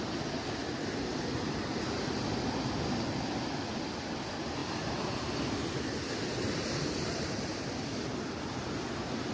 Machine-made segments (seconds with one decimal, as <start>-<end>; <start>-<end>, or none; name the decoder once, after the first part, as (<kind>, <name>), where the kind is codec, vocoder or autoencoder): 4.6-7.7 (vocoder, BigVGAN v2)